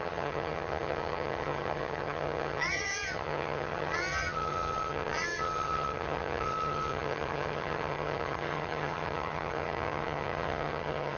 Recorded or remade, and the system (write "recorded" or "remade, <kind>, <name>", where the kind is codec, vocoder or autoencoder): remade, vocoder, HiFi-GAN